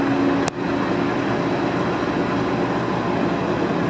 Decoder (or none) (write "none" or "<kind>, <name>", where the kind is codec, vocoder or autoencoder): none